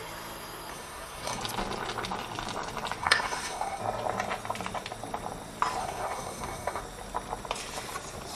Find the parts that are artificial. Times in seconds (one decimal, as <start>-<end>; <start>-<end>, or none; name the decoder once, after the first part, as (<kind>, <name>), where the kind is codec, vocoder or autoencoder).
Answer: 0.7-1.4 (codec, SNAC); 3.0-3.8; 5.8-6.8